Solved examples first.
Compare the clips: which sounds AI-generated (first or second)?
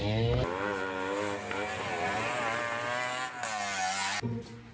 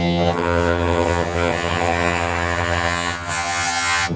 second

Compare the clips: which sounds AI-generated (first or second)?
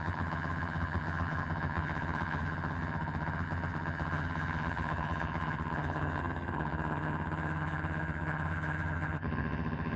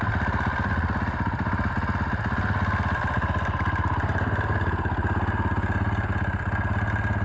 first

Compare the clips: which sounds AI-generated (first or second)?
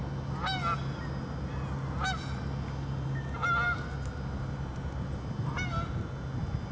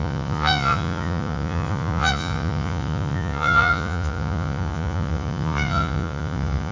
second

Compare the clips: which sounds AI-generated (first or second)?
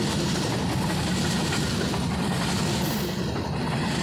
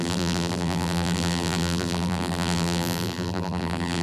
second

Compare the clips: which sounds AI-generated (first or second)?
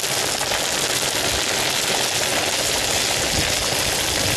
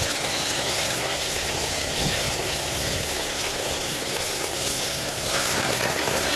second